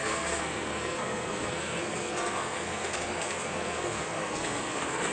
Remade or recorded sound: remade